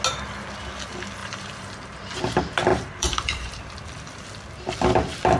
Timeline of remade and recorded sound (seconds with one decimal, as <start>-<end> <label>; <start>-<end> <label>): 0.0-1.2 recorded; 1.2-2.2 remade; 2.2-2.7 recorded; 2.7-3.6 remade; 3.6-5.4 recorded